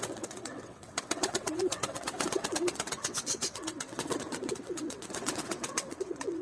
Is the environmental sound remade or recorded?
remade